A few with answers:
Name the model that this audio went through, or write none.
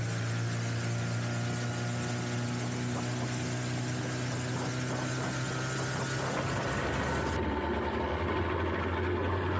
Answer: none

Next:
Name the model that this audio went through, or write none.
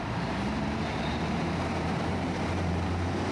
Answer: vocoder, BigVGAN v2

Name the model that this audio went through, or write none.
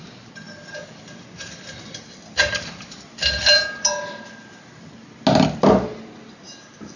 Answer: none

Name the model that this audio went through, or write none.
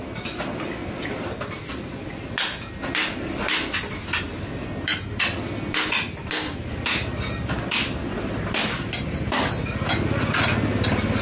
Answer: none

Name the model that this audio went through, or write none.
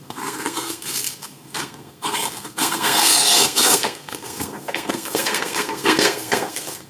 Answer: codec, SNAC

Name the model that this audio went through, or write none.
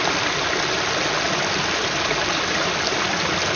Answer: none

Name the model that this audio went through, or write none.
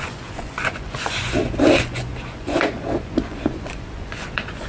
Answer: vocoder, Vocos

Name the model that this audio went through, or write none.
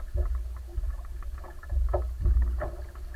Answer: none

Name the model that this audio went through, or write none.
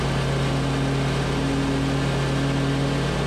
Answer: none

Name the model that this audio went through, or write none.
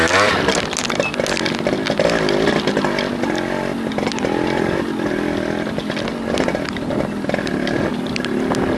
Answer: none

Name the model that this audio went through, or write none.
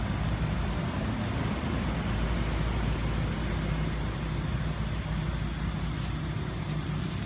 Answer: none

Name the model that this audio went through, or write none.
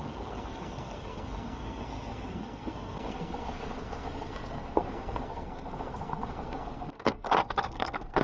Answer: codec, SNAC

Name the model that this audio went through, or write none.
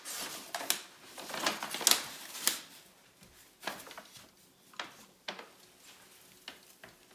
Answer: none